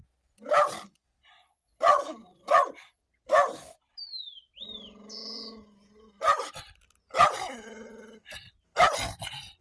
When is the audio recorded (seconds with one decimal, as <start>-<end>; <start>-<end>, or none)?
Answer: 0.0-1.4; 3.0-9.6